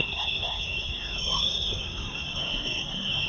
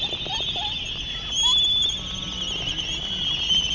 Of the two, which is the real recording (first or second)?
second